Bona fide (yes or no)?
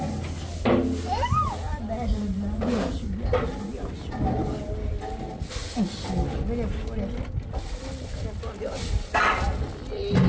yes